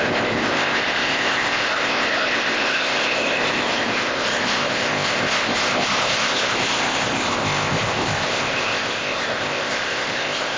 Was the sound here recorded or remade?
remade